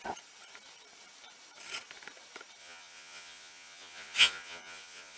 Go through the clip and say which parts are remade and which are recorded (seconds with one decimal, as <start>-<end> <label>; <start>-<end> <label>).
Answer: 0.0-2.6 recorded; 2.6-5.2 remade